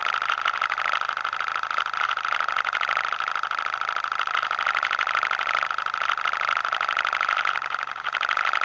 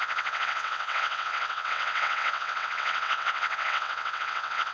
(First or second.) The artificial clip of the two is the second